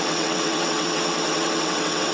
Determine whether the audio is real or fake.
fake